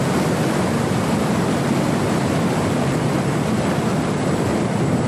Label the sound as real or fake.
fake